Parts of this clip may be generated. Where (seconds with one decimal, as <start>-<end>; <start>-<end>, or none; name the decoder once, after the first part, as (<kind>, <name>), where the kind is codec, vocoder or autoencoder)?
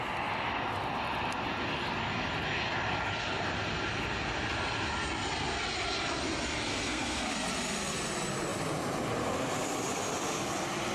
6.7-7.3 (codec, SNAC)